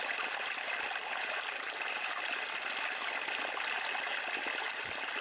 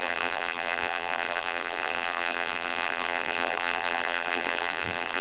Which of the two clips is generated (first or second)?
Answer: second